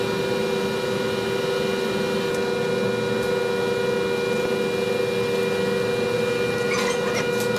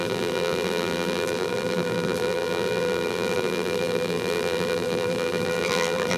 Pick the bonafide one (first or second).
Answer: first